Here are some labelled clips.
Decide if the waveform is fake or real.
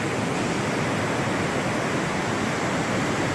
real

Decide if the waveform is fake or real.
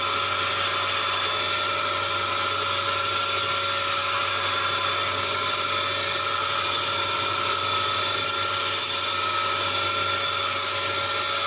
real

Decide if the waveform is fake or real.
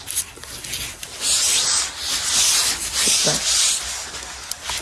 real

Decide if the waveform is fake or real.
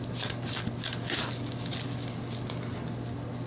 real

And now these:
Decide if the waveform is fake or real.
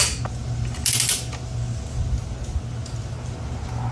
real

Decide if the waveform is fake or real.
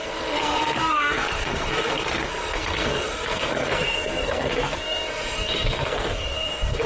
fake